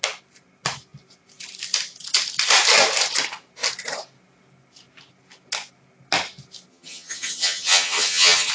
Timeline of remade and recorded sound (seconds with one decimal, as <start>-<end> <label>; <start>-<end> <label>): 0.0-6.7 recorded; 6.7-8.5 remade

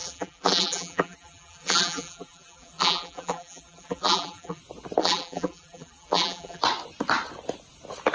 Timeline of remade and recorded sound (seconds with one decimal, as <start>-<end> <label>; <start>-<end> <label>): 0.0-4.6 remade; 4.6-5.0 recorded; 5.0-6.6 remade; 6.6-8.1 recorded